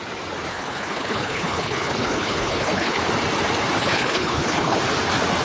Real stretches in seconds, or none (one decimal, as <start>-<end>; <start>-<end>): 0.0-0.5; 3.0-3.8; 4.8-5.4